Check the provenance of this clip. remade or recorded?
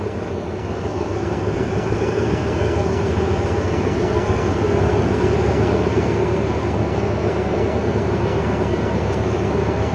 remade